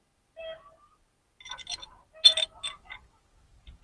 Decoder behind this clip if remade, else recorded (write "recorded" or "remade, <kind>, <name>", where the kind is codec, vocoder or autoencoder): recorded